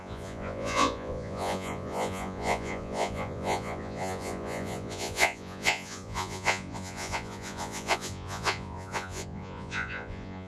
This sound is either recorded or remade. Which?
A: remade